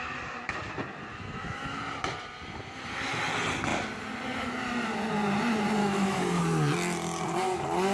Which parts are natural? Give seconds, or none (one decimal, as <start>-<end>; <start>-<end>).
0.0-1.1; 1.8-5.8; 6.4-7.9

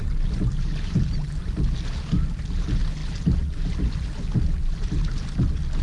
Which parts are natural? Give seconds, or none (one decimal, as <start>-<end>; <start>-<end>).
0.0-5.8